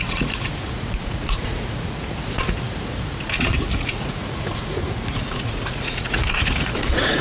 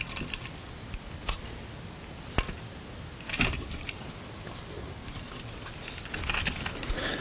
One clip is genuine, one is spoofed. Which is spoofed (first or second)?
first